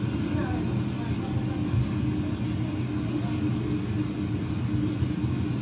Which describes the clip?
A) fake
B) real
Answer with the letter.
B